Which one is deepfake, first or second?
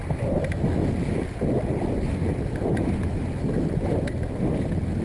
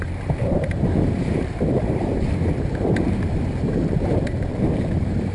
second